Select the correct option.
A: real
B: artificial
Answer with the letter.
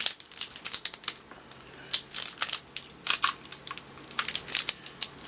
A